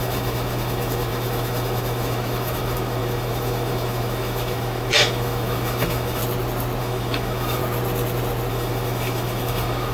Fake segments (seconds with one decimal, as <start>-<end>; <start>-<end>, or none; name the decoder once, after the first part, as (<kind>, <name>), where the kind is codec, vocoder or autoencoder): 0.0-6.2 (autoencoder, DAC-VAE); 6.8-7.6; 8.5-9.9